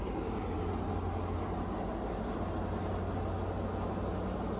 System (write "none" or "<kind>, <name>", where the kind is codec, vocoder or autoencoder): none